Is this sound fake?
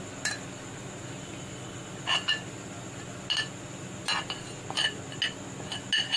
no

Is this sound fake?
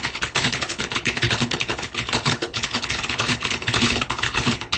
yes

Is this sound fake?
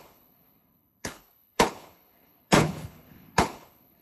yes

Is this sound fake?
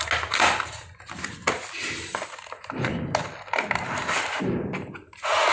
no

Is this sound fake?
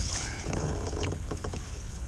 yes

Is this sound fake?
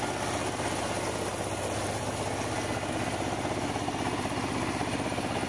no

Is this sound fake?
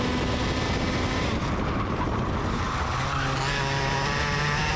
no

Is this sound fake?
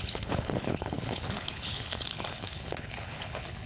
yes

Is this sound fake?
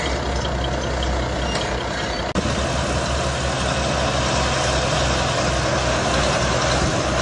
no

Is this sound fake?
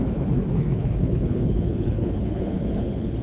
yes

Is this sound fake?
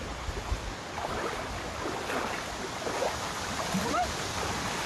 no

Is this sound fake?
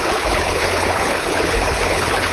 yes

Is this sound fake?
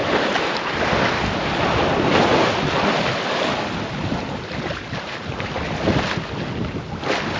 no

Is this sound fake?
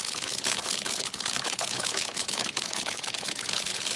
yes